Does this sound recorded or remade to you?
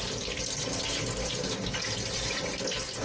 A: recorded